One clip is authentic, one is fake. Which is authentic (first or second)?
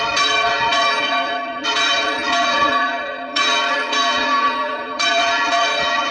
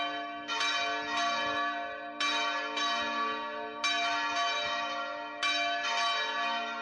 second